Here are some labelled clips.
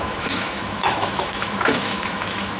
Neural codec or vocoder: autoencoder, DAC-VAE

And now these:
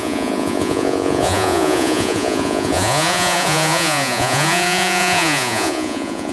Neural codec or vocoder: vocoder, Vocos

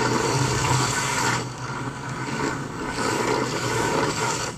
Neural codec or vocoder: codec, DAC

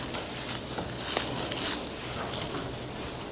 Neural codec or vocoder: none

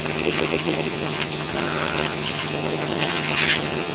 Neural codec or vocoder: vocoder, HiFi-GAN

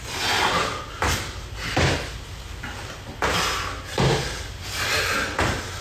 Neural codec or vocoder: none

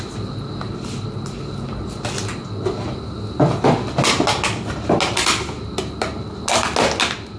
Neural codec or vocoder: none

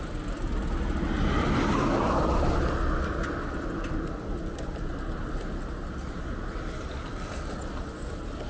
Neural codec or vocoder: none